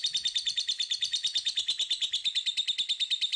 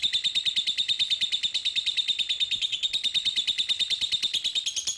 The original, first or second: first